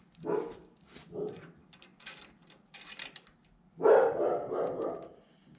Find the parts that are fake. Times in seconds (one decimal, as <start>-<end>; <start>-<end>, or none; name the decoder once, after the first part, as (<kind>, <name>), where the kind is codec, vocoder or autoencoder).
none